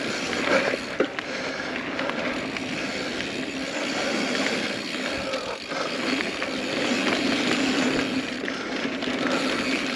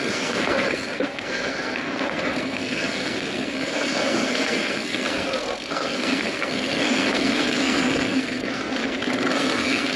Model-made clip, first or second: second